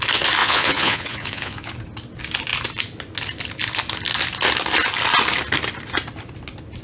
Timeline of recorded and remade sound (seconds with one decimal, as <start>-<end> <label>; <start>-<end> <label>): 0.0-0.4 recorded; 0.4-1.7 remade; 1.7-6.8 recorded